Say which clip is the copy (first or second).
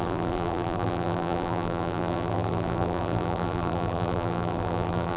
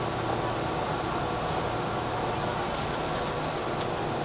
first